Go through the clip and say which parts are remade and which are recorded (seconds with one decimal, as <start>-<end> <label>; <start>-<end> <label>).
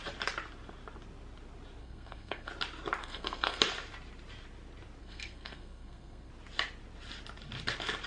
0.0-1.8 recorded; 1.8-2.5 remade; 2.5-3.0 recorded; 3.0-3.6 remade; 3.6-5.0 recorded; 5.0-6.3 remade; 6.3-8.1 recorded